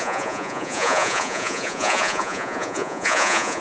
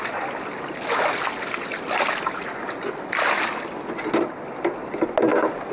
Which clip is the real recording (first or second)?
second